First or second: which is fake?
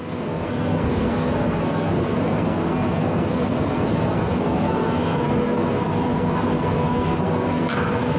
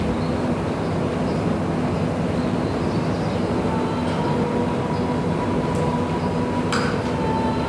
first